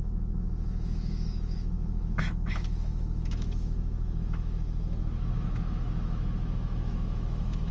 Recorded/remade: remade